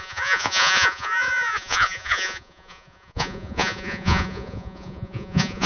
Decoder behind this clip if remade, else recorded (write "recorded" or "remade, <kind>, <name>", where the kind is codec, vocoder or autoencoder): remade, vocoder, Vocos